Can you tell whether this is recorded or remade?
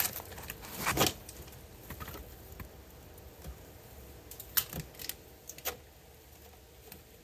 recorded